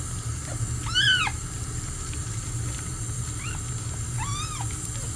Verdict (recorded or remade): recorded